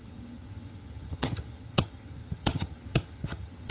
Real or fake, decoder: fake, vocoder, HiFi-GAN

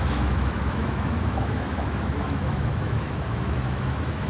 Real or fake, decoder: fake, autoencoder, DAC-VAE